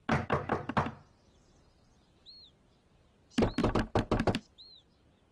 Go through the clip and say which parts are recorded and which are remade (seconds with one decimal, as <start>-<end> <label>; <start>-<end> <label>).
0.0-3.2 recorded; 3.2-5.3 remade